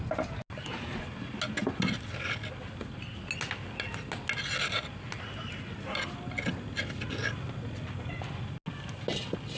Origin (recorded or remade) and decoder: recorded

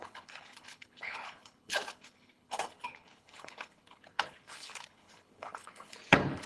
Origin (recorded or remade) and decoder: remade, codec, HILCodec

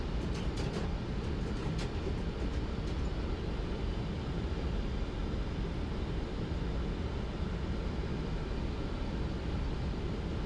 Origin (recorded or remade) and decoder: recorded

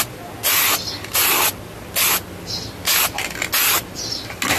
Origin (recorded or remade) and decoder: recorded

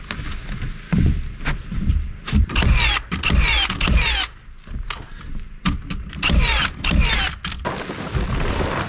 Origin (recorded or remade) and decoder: recorded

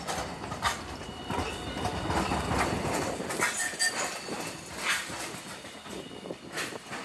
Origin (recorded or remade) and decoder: recorded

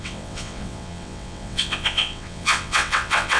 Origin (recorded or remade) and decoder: remade, vocoder, WaveNeXt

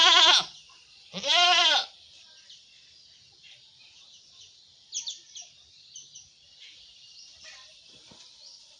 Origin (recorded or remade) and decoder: remade, vocoder, BigVGAN v2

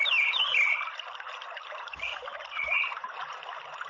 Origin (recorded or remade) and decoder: recorded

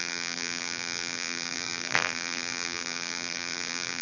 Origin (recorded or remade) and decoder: remade, vocoder, BigVGAN v2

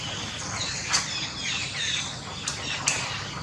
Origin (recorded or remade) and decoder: recorded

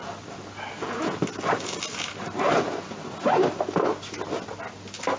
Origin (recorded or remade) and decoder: recorded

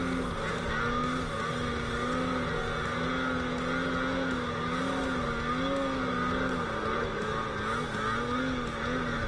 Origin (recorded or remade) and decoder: recorded